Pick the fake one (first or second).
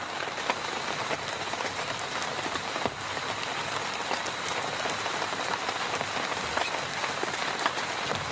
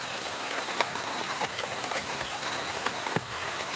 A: second